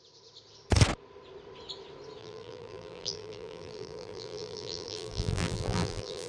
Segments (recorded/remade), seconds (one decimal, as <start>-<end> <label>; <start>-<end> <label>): 0.0-2.2 recorded; 2.2-6.3 remade